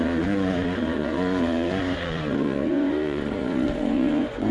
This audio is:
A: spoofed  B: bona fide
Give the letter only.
A